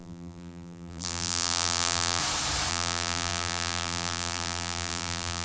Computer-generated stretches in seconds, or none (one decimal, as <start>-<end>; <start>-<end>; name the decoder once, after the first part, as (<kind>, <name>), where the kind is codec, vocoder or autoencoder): 0.0-2.2 (vocoder, BigVGAN v2); 2.7-5.4